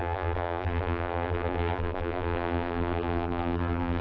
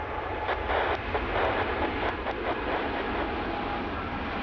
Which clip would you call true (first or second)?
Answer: second